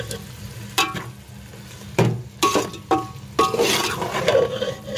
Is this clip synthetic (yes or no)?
no